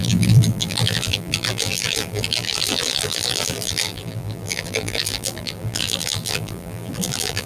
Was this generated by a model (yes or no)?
yes